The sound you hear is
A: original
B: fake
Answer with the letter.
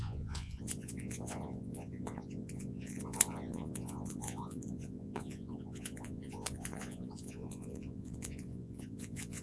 B